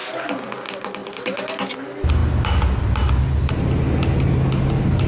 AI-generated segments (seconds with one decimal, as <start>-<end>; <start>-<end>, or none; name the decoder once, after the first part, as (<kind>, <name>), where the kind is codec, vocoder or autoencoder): none